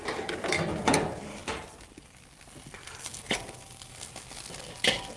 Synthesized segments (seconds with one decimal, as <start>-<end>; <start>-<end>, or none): none